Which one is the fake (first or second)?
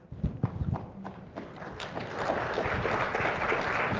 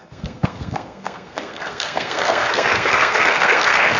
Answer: second